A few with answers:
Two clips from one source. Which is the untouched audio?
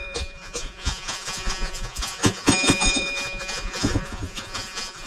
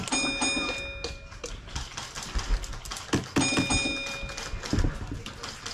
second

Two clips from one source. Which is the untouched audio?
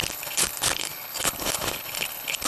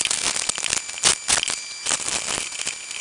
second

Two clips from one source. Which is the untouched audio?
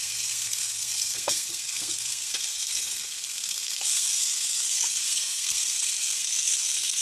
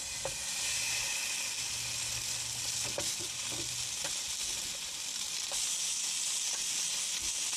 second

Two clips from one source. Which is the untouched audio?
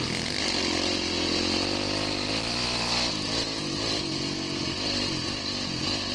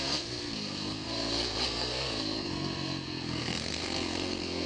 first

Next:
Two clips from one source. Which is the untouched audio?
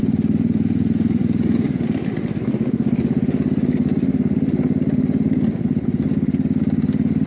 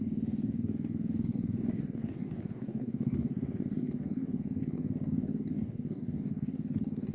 first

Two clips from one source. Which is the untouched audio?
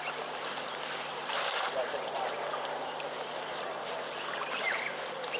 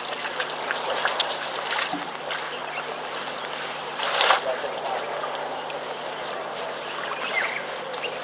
second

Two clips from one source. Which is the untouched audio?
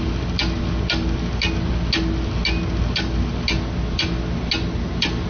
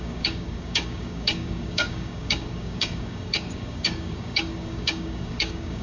first